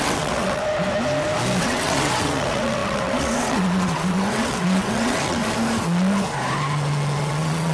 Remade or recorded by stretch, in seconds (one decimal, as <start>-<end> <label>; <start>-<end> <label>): 0.0-0.6 remade; 0.6-1.6 recorded; 1.6-5.4 remade; 5.4-7.2 recorded; 7.2-7.7 remade